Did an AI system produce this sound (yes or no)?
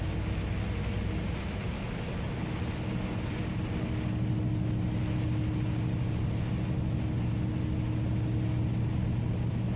no